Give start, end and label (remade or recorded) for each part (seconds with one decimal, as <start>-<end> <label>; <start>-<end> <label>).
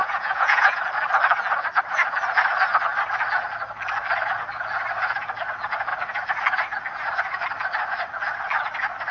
0.0-0.8 remade; 0.8-9.1 recorded